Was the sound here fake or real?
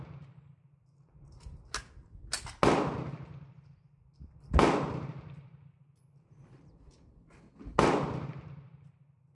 real